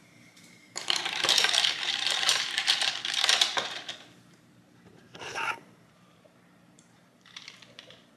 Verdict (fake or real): fake